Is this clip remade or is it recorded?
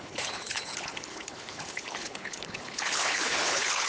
remade